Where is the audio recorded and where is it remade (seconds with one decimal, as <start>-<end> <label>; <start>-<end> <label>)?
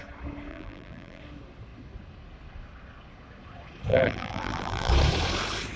0.0-0.5 recorded; 0.5-1.2 remade; 1.2-3.9 recorded; 3.9-4.9 remade; 4.9-5.8 recorded